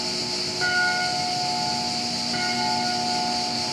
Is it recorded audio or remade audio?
recorded